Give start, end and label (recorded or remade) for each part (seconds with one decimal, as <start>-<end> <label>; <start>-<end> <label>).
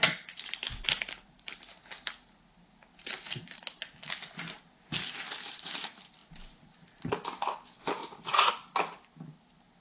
0.0-8.0 recorded; 8.0-8.5 remade; 8.5-9.8 recorded